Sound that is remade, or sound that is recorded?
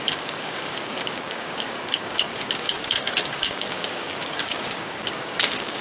remade